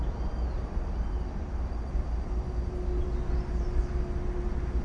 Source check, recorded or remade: recorded